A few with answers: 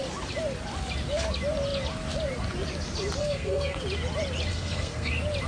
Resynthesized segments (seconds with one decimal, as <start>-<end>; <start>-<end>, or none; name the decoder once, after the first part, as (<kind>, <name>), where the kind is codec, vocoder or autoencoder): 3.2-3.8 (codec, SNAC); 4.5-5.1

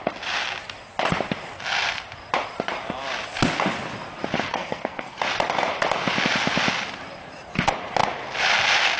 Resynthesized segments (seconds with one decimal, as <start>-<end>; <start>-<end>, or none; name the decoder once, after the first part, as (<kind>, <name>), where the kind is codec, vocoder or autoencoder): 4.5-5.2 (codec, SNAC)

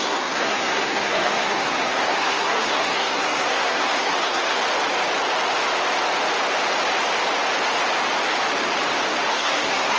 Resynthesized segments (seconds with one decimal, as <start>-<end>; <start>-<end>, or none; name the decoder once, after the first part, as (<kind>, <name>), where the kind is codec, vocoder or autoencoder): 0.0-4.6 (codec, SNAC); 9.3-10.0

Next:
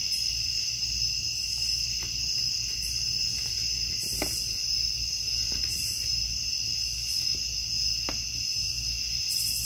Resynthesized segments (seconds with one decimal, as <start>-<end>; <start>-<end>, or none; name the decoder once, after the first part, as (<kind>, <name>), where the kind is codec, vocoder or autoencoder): none

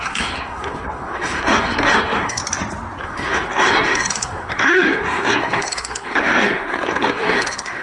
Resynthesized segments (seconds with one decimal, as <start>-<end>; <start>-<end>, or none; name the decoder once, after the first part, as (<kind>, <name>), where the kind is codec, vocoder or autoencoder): 0.0-2.4 (codec, SNAC); 3.0-7.8

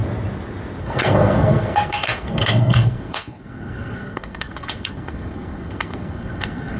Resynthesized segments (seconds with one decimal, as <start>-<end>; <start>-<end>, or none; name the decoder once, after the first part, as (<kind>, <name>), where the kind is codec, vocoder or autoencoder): 0.8-6.8 (codec, SNAC)

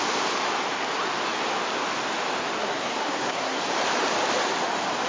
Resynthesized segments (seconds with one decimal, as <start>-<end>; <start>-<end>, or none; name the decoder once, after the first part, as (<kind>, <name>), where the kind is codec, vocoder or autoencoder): 2.6-3.6 (codec, SNAC)